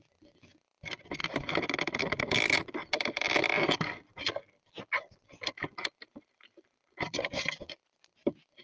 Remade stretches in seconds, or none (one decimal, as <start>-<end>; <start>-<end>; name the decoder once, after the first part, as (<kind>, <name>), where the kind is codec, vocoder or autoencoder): 1.2-2.2 (vocoder, BigVGAN v2)